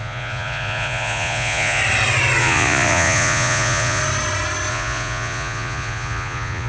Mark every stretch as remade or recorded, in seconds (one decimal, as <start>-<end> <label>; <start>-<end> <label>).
0.0-1.8 remade; 1.8-2.4 recorded; 2.4-4.0 remade; 4.0-4.7 recorded; 4.7-6.7 remade